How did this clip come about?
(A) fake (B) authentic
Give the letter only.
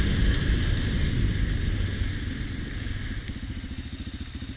B